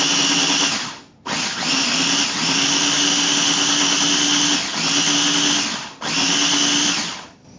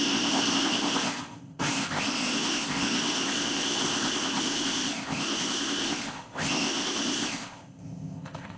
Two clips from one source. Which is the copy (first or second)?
second